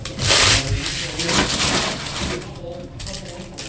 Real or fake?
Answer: real